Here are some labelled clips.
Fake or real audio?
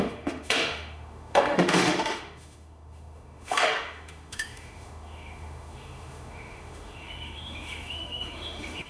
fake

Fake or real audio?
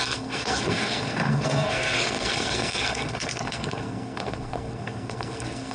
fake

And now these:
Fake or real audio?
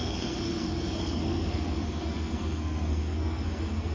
fake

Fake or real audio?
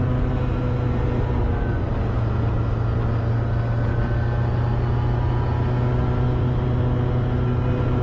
real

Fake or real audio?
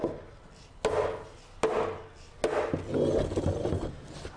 real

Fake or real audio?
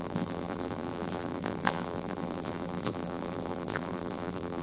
fake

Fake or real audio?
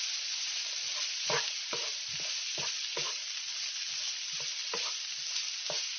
real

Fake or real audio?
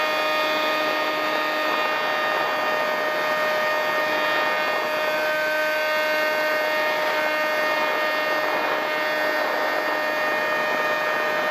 real